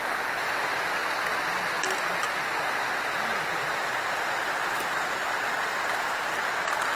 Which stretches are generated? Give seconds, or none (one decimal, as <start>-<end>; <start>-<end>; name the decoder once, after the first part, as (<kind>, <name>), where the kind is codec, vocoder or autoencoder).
none